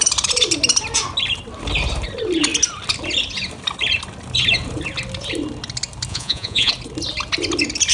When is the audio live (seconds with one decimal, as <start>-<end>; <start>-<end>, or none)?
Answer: 0.0-6.1; 6.7-7.9